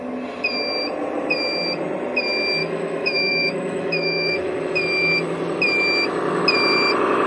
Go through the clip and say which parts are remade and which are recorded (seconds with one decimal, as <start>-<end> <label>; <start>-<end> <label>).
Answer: 0.0-2.6 recorded; 2.6-4.6 remade; 4.6-7.3 recorded